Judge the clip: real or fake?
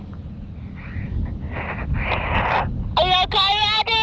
real